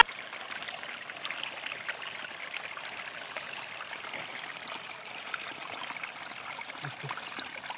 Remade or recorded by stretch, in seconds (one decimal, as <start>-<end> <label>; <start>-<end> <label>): 0.0-7.8 recorded